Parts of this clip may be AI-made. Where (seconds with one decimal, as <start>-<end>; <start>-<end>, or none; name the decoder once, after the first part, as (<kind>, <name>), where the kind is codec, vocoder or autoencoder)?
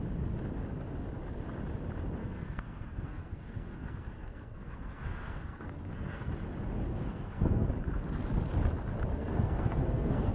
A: 2.2-6.3 (codec, SNAC); 6.9-7.7; 9.1-10.3